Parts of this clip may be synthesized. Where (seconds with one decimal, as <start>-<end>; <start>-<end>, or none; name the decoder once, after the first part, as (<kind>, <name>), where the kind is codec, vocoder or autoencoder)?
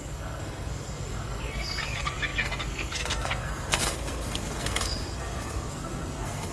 0.0-6.5 (codec, SNAC)